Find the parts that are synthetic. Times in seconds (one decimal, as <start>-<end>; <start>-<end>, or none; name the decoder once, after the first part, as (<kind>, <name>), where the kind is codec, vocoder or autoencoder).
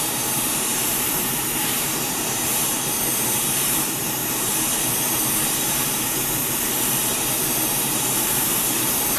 0.0-2.6 (vocoder, BigVGAN v2); 3.1-4.5; 5.4-6.4; 7.9-9.2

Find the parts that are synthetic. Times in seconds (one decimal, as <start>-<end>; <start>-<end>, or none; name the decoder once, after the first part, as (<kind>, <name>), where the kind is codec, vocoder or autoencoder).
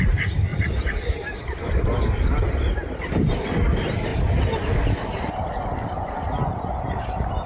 0.5-3.3 (vocoder, BigVGAN v2)